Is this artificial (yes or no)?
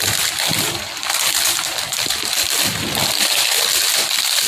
yes